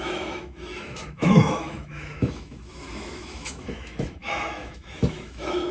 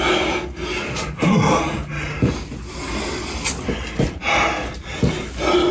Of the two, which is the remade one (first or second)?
first